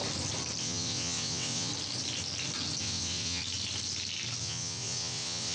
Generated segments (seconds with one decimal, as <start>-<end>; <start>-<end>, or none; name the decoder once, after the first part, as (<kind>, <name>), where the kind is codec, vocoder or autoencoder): 0.6-1.7 (vocoder, WaveNeXt); 2.8-3.4; 4.4-5.5